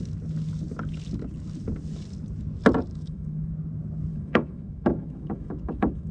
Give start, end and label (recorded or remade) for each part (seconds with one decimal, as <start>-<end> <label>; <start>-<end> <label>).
0.0-2.9 recorded; 2.9-3.5 remade; 3.5-4.1 recorded; 4.1-6.1 remade

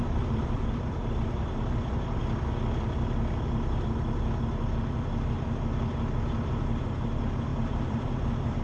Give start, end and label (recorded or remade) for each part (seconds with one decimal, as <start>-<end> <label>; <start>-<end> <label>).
0.0-2.2 remade; 2.2-6.8 recorded; 6.8-8.6 remade

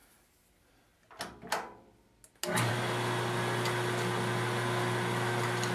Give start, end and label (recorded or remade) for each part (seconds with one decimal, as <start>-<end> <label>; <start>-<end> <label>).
0.0-5.7 recorded

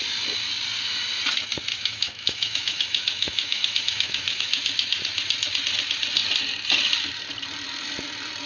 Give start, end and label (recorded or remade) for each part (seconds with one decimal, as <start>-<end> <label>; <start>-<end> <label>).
0.0-1.7 recorded; 1.7-4.6 remade; 4.6-8.5 recorded

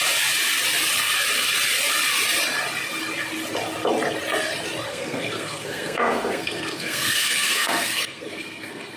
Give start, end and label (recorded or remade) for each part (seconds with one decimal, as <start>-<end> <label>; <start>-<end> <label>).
0.0-4.9 recorded; 4.9-9.0 remade

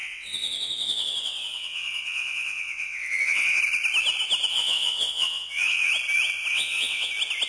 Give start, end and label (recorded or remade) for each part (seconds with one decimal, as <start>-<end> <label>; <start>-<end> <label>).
0.0-3.6 remade; 3.6-4.5 recorded; 4.5-5.9 remade; 5.9-6.5 recorded; 6.5-7.1 remade; 7.1-7.5 recorded

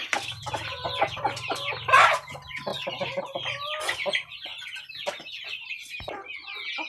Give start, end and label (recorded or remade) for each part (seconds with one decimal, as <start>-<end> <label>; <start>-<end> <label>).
0.0-6.9 recorded